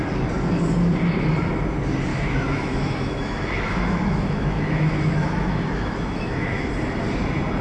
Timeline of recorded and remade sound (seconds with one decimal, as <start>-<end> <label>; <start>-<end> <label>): 0.0-2.1 recorded; 2.1-6.7 remade; 6.7-7.6 recorded